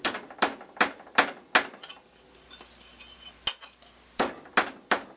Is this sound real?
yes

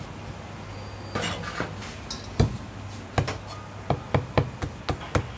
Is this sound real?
yes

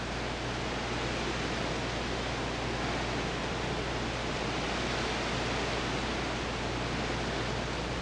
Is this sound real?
yes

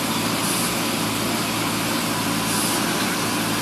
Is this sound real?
yes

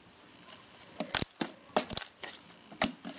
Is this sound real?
yes